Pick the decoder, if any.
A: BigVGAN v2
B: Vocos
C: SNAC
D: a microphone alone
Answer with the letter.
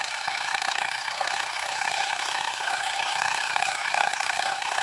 C